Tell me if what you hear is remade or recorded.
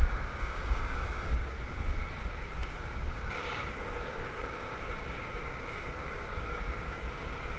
remade